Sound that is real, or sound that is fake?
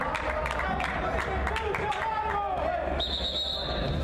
real